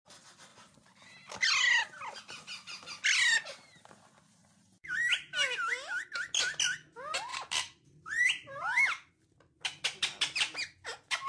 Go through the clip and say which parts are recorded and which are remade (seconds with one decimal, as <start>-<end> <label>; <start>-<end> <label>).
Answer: 0.0-4.4 recorded; 4.4-5.0 remade; 5.0-7.3 recorded; 7.3-9.1 remade; 9.1-11.3 recorded